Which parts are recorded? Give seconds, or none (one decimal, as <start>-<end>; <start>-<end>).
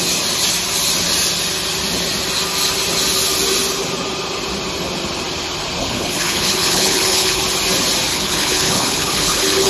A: 0.0-5.8; 7.4-8.1